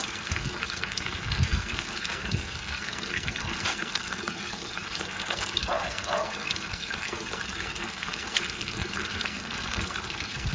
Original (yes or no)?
no